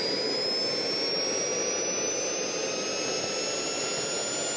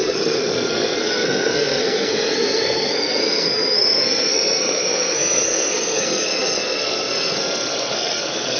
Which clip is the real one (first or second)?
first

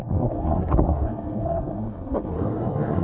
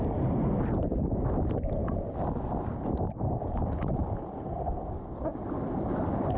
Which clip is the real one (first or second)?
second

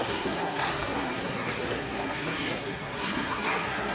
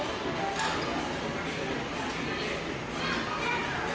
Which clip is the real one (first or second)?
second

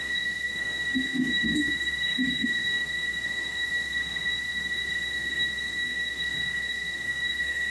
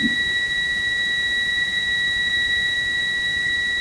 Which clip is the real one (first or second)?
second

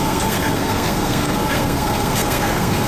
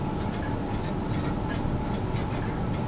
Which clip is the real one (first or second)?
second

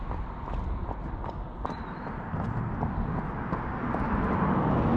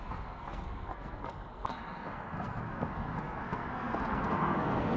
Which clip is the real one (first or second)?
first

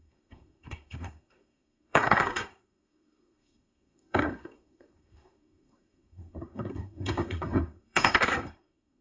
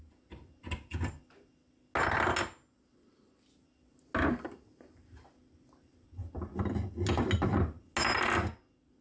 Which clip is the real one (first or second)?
second